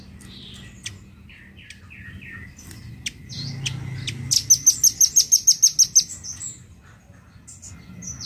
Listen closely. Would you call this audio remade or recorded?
recorded